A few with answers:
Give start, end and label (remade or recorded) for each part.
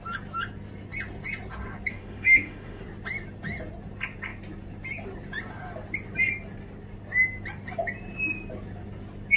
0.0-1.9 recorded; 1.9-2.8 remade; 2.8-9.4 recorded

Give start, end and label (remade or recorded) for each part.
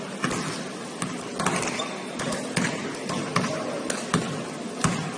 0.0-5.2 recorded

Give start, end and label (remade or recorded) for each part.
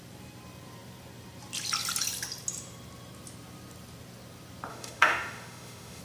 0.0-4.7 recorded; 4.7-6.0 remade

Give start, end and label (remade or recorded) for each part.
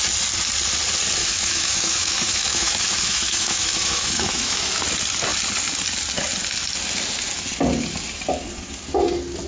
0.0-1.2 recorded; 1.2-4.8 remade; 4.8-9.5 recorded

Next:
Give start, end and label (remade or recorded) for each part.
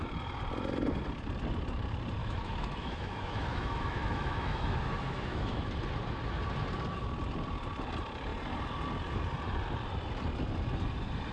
0.0-2.2 recorded; 2.2-5.7 remade; 5.7-11.3 recorded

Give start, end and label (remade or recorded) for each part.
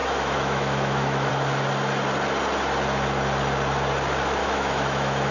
0.0-1.3 remade; 1.3-4.4 recorded; 4.4-5.3 remade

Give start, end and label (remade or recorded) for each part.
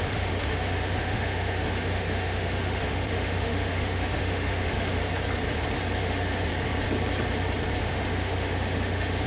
0.0-5.0 remade; 5.0-6.0 recorded; 6.0-6.5 remade; 6.5-7.8 recorded; 7.8-9.3 remade